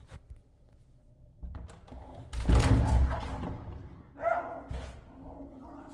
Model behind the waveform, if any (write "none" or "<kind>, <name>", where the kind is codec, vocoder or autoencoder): none